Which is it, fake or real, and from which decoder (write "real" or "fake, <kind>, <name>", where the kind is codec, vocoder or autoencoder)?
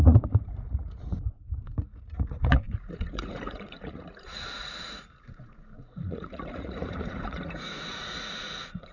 fake, vocoder, Vocos